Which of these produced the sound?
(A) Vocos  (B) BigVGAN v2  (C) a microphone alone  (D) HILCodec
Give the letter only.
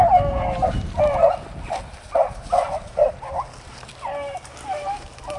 C